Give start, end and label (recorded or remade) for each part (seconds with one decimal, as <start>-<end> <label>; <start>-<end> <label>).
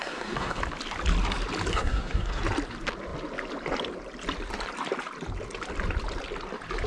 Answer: 0.0-0.6 remade; 0.6-1.7 recorded; 1.7-2.4 remade; 2.4-6.9 recorded